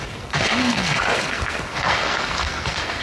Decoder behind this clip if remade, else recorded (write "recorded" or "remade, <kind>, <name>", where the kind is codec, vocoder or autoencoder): remade, codec, SNAC